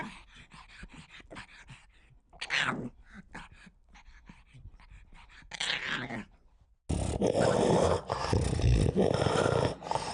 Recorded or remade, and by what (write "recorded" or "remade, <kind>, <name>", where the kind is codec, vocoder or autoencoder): recorded